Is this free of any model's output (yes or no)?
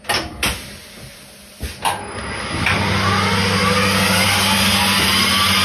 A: yes